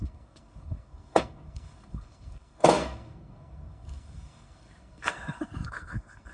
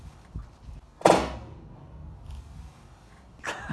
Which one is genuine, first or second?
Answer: second